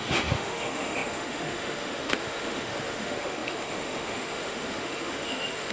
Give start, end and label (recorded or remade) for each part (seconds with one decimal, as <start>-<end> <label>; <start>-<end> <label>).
0.0-5.7 remade